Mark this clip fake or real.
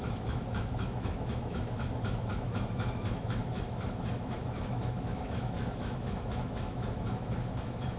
fake